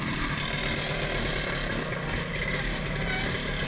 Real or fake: real